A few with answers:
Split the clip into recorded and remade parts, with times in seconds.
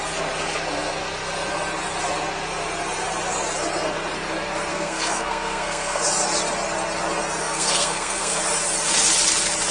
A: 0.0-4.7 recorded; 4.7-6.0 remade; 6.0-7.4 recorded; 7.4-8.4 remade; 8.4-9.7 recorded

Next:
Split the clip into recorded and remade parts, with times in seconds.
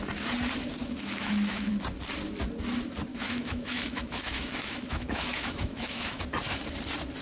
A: 0.0-0.8 recorded; 0.8-1.7 remade; 1.7-3.1 recorded; 3.1-6.2 remade; 6.2-7.2 recorded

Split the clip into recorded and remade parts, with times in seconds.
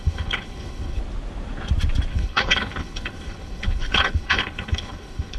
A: 0.0-1.0 remade; 1.0-2.1 recorded; 2.1-5.4 remade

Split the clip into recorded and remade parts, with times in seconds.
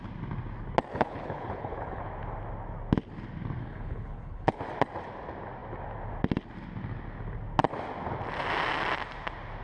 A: 0.0-0.9 recorded; 0.9-2.0 remade; 2.0-3.6 recorded; 3.6-4.6 remade; 4.6-9.6 recorded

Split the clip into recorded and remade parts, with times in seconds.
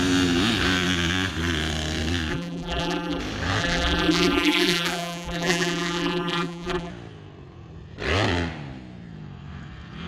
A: 0.0-2.3 recorded; 2.3-3.2 remade; 3.2-3.6 recorded; 3.6-6.9 remade; 6.9-10.1 recorded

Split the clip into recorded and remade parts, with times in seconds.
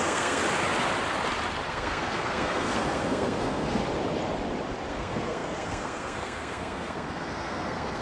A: 0.0-0.4 remade; 0.4-1.7 recorded; 1.7-3.8 remade; 3.8-4.9 recorded; 4.9-8.0 remade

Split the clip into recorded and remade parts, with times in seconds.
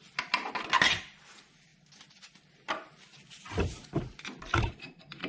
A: 0.0-5.3 recorded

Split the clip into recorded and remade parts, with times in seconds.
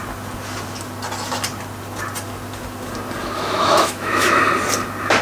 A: 0.0-3.2 recorded; 3.2-4.4 remade; 4.4-5.2 recorded